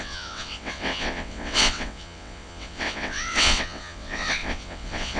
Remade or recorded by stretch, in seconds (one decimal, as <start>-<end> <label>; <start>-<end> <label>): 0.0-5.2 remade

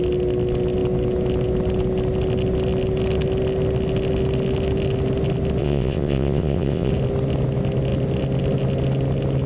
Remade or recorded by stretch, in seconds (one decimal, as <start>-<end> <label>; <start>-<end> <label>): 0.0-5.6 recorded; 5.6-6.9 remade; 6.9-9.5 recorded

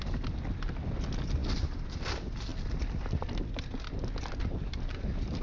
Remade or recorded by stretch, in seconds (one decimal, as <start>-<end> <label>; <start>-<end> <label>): 0.0-5.4 recorded

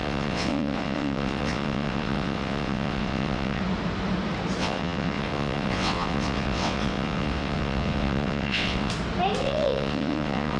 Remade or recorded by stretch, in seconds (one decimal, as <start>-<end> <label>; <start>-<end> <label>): 0.0-3.6 remade; 3.6-4.6 recorded; 4.6-8.9 remade; 8.9-9.4 recorded; 9.4-10.6 remade